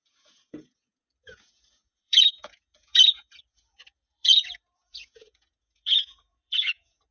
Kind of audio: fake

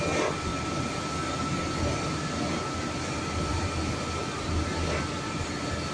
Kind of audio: real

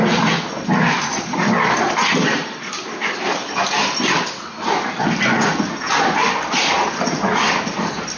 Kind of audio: real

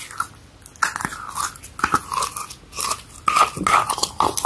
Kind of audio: real